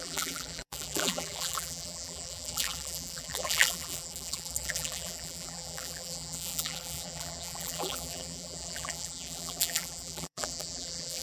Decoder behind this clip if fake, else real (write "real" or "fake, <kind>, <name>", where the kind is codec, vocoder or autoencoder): fake, vocoder, BigVGAN v2